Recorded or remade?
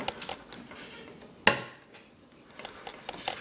recorded